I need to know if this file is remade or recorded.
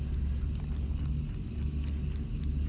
recorded